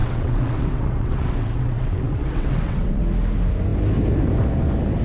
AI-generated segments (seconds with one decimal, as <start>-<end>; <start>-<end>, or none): 0.0-3.0